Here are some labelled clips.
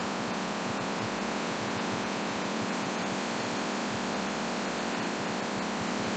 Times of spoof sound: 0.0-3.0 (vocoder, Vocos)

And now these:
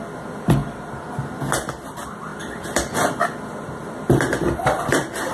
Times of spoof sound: none

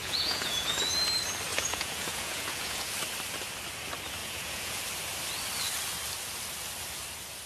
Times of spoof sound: 0.0-0.7 (vocoder, Vocos); 1.5-2.9; 4.2-4.8